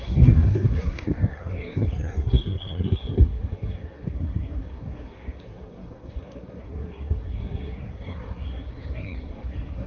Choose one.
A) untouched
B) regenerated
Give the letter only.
B